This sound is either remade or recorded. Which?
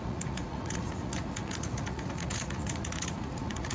remade